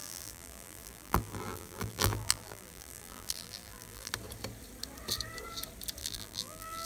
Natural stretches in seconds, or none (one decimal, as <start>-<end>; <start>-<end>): 4.1-6.0